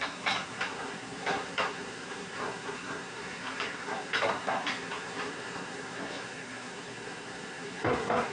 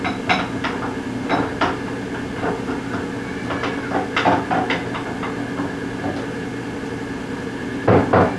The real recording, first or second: second